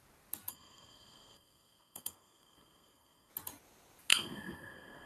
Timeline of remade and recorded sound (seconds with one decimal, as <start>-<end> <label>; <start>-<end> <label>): 0.0-0.5 recorded; 0.5-3.3 remade; 3.3-4.1 recorded; 4.1-5.1 remade